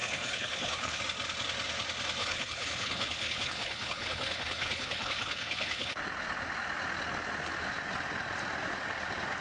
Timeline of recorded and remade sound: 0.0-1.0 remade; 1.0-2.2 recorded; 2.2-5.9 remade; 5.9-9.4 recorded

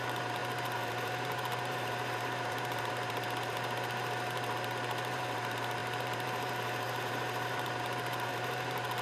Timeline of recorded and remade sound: 0.0-9.0 remade

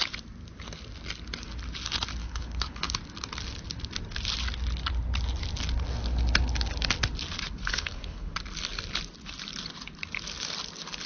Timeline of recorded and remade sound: 0.0-2.2 recorded; 2.2-2.9 remade; 2.9-7.6 recorded; 7.6-8.3 remade; 8.3-11.1 recorded

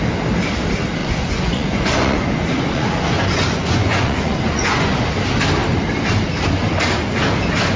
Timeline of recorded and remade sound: 0.0-1.0 recorded; 1.0-5.1 remade; 5.1-7.8 recorded

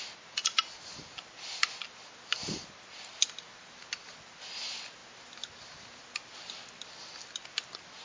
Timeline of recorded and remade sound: 0.0-8.0 recorded